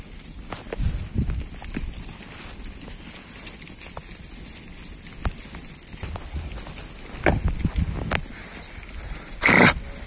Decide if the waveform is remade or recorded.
recorded